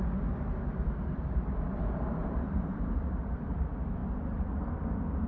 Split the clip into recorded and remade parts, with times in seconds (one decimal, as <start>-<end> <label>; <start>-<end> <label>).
0.0-2.2 recorded; 2.2-2.8 remade; 2.8-4.0 recorded; 4.0-4.5 remade; 4.5-5.3 recorded